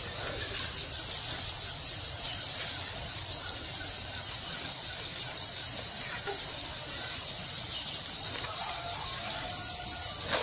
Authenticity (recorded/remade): recorded